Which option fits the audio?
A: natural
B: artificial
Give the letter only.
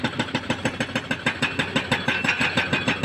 A